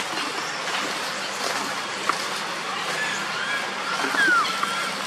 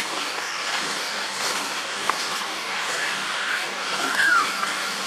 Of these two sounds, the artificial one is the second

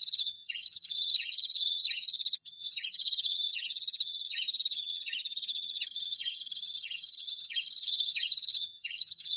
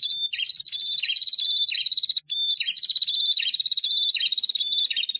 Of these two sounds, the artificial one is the first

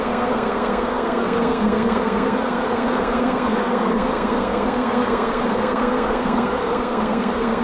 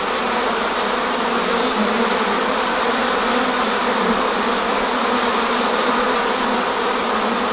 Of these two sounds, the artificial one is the first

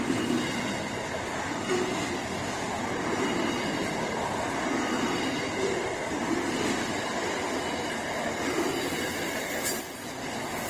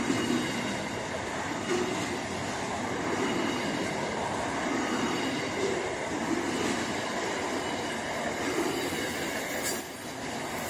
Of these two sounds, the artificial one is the second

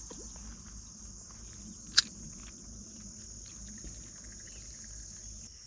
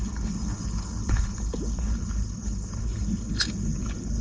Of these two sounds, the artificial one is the second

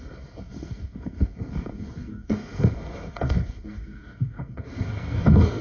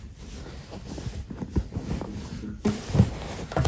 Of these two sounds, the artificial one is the first